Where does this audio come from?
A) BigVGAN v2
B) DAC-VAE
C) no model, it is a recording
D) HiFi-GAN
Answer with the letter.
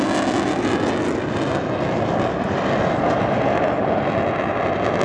C